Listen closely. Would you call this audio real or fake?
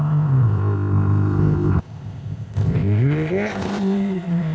fake